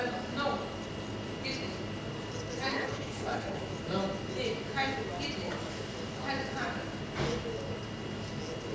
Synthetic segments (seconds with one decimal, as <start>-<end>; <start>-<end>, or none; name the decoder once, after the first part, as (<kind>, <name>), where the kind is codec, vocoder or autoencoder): 2.7-3.6 (codec, HILCodec)